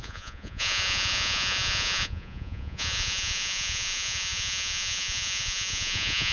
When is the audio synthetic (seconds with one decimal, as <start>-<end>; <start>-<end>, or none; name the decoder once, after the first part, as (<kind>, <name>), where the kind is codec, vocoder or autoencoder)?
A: 0.0-6.3 (vocoder, Vocos)

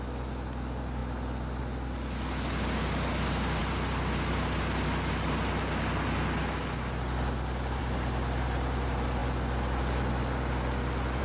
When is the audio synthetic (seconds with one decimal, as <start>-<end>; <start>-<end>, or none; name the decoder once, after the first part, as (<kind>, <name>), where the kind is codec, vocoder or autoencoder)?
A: none